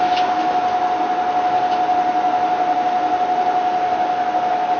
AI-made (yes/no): no